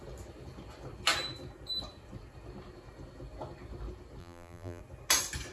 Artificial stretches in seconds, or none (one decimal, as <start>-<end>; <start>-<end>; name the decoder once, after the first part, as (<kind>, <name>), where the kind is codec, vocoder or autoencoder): 4.2-4.8 (vocoder, BigVGAN v2)